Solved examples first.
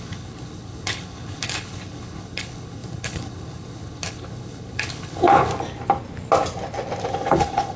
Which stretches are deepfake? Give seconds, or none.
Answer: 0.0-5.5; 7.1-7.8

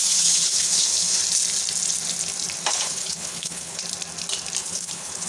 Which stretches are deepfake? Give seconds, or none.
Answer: 0.0-1.2; 2.7-3.8; 4.6-5.3

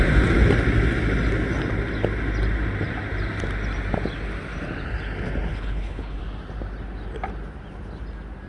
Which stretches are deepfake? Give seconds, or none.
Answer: 5.5-6.2

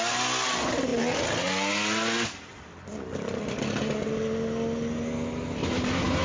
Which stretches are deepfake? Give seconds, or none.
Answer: none

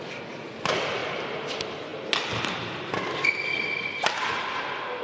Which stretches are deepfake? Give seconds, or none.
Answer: none

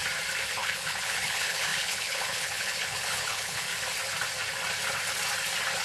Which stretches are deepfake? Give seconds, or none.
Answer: 0.5-3.7